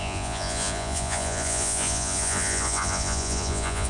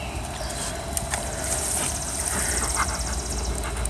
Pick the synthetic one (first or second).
first